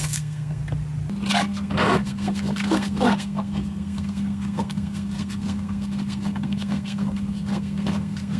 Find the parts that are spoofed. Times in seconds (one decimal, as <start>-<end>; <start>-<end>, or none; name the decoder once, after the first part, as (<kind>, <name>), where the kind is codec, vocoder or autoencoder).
0.0-0.6 (codec, SNAC); 1.3-8.4